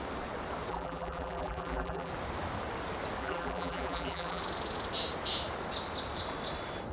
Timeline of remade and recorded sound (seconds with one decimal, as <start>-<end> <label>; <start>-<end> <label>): 0.0-0.7 recorded; 0.7-2.1 remade; 2.1-3.2 recorded; 3.2-4.4 remade; 4.4-6.9 recorded